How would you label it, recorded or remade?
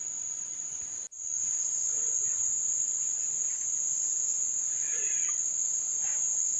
recorded